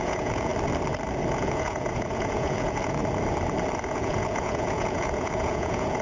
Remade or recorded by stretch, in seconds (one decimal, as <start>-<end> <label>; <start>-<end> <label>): 0.0-0.5 remade; 0.5-1.3 recorded; 1.3-3.0 remade; 3.0-3.8 recorded; 3.8-6.0 remade